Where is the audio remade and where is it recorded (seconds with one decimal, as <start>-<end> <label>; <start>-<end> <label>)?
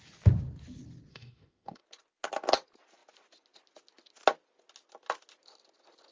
0.0-1.1 recorded; 1.1-1.8 remade; 1.8-6.1 recorded